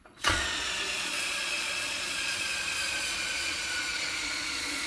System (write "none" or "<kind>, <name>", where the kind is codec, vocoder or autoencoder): vocoder, Vocos